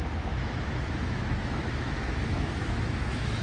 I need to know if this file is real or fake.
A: fake